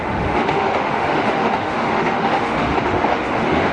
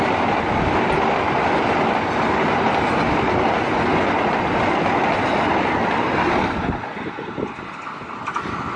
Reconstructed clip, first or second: first